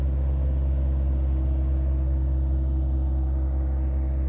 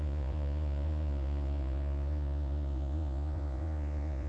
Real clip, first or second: first